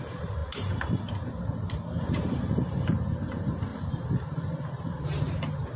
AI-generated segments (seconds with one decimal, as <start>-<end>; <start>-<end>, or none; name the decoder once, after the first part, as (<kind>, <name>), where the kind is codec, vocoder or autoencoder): 0.0-3.7 (vocoder, BigVGAN v2); 4.7-5.8